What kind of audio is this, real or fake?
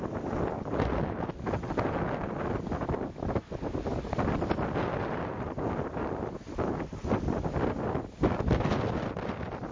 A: real